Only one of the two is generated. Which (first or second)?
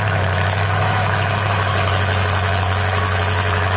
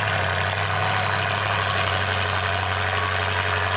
first